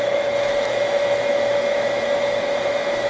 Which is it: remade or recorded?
remade